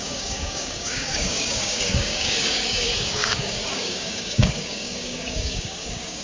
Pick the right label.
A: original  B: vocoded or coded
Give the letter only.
B